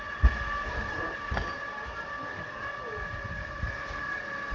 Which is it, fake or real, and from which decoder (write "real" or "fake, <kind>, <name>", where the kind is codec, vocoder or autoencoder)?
real